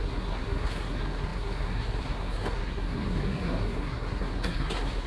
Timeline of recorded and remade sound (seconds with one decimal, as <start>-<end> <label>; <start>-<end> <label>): 0.0-5.1 remade